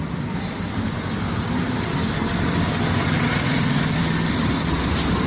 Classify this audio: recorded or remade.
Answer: recorded